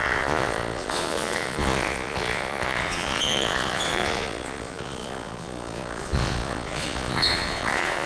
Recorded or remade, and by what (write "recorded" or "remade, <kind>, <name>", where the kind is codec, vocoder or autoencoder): remade, vocoder, Vocos